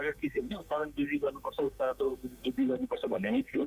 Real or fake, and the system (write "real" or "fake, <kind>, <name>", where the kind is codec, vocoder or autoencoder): fake, codec, SNAC